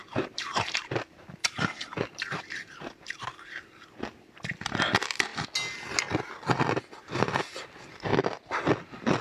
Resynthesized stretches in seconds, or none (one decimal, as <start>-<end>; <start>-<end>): 0.0-3.7